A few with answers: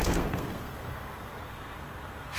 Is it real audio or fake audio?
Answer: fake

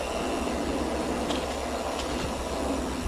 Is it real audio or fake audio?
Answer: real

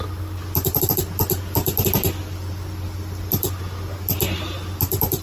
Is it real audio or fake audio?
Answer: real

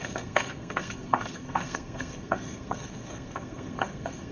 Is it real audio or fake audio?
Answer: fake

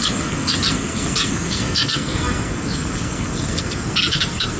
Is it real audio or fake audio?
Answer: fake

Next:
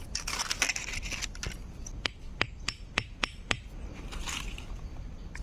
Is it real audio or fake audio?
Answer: real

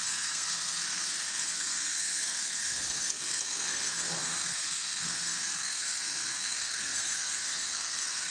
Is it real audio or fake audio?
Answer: fake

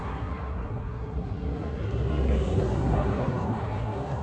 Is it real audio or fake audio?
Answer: fake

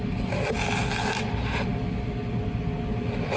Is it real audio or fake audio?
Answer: real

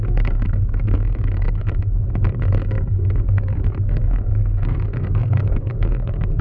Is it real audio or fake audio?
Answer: fake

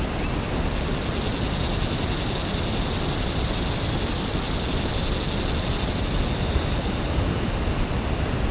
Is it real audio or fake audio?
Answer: real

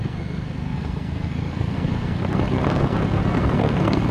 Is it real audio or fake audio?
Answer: fake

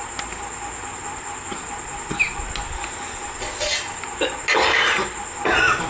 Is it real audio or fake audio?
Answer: real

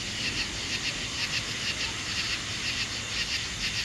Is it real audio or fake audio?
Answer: real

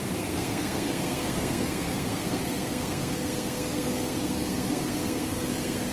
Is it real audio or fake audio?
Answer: fake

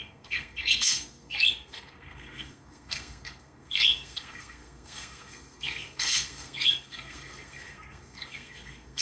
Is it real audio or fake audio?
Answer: fake